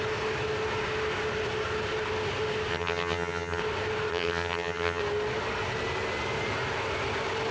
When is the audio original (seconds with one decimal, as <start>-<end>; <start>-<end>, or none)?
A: 0.0-2.7; 3.6-4.1; 5.0-7.5